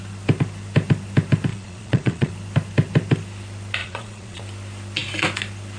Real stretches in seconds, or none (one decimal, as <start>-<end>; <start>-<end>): 0.0-1.5; 2.3-3.8; 4.4-5.8